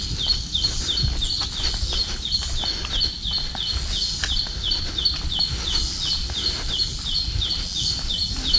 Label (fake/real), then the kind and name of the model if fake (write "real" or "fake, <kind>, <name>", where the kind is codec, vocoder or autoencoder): real